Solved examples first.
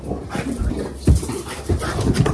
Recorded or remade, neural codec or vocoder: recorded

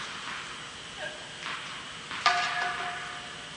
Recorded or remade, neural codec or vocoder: recorded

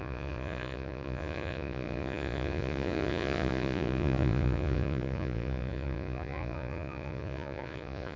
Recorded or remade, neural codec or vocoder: remade, vocoder, Vocos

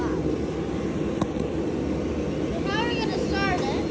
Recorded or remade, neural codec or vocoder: recorded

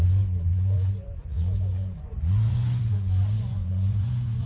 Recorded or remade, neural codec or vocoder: remade, vocoder, Vocos